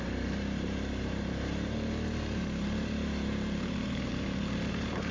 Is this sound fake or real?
fake